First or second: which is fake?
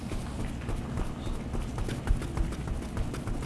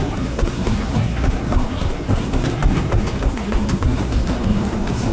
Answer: second